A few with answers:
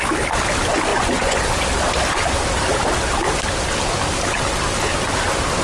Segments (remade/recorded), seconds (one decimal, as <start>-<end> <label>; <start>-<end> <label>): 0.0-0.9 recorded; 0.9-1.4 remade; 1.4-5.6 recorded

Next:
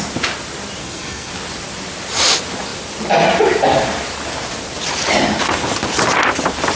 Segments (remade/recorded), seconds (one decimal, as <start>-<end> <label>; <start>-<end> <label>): 0.0-0.8 recorded; 0.8-1.3 remade; 1.3-6.8 recorded

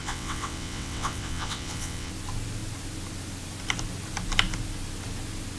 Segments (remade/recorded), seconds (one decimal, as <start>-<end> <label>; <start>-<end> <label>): 0.0-2.1 remade; 2.1-5.6 recorded

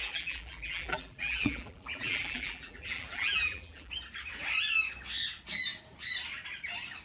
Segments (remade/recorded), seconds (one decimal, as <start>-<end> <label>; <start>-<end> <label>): 0.0-3.9 remade; 3.9-7.0 recorded

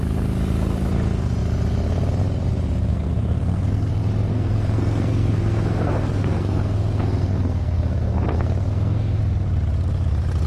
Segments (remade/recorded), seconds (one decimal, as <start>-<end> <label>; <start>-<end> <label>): 0.0-2.9 recorded; 2.9-3.9 remade; 3.9-4.3 recorded; 4.3-9.2 remade; 9.2-10.5 recorded

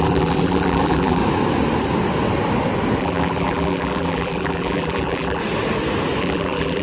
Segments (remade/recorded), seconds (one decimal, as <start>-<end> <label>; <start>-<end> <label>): 0.0-1.2 remade; 1.2-3.0 recorded; 3.0-5.4 remade; 5.4-6.2 recorded; 6.2-6.8 remade

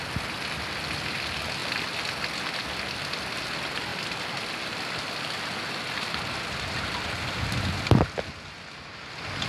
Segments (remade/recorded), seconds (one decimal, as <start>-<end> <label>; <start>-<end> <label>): 0.0-9.5 recorded

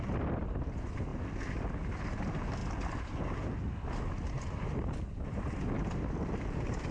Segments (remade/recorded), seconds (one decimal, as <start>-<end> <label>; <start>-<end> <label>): 0.0-6.9 recorded